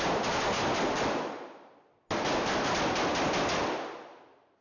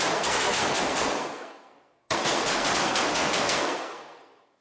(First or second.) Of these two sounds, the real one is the first